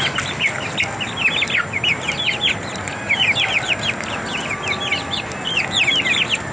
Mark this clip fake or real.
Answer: real